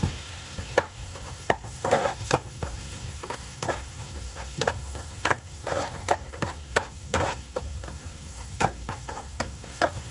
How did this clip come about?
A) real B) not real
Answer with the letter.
B